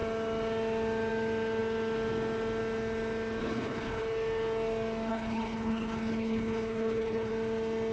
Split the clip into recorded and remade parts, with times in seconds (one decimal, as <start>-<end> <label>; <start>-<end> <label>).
0.0-3.4 recorded; 3.4-4.0 remade; 4.0-5.1 recorded; 5.1-7.3 remade; 7.3-7.9 recorded